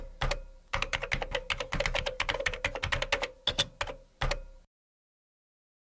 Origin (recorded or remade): recorded